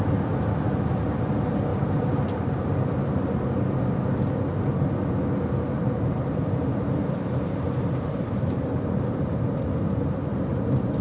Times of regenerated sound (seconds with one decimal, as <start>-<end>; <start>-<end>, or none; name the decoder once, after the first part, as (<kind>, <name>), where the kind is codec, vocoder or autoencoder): 1.7-2.4 (vocoder, BigVGAN v2); 5.8-8.7